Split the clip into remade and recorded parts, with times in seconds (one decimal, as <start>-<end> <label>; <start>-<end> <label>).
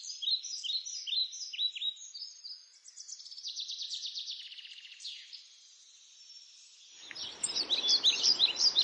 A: 0.0-7.2 recorded; 7.2-7.7 remade; 7.7-8.1 recorded; 8.1-8.8 remade